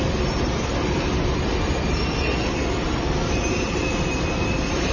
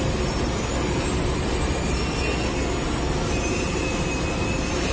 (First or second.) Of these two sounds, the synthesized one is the first